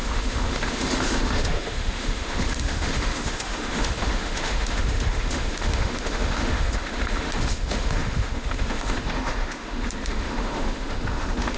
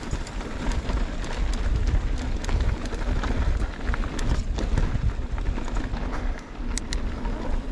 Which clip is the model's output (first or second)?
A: first